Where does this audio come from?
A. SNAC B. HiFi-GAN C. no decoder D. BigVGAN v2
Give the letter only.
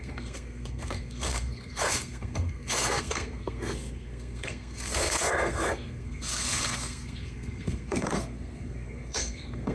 A